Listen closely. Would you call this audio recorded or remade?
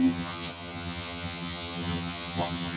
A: remade